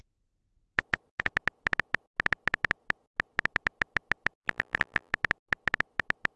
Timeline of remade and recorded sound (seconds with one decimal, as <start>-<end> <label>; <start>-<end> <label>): 0.0-4.4 recorded; 4.4-5.1 remade; 5.1-6.4 recorded